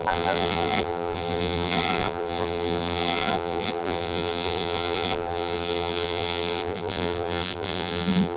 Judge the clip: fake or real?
fake